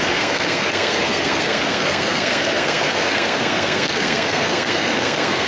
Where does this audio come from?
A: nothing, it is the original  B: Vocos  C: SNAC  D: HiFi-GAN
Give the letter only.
C